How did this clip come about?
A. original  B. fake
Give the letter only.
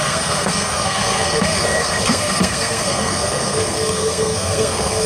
B